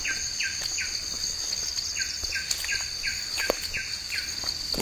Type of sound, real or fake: real